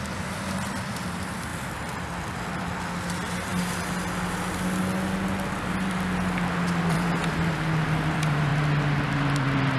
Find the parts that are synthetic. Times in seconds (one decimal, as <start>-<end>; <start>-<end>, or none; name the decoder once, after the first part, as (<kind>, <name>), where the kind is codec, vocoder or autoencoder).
0.0-3.5 (vocoder, BigVGAN v2); 6.8-8.5; 9.1-9.8